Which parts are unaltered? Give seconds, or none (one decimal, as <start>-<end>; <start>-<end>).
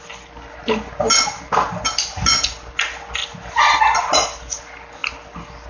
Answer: 0.0-5.7